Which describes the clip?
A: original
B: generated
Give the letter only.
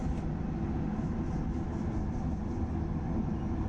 A